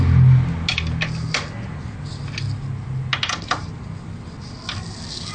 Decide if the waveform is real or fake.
real